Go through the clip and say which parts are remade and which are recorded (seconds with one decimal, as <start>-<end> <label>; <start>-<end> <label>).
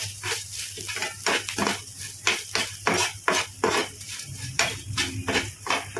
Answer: 0.0-3.8 recorded; 3.8-4.7 remade; 4.7-6.0 recorded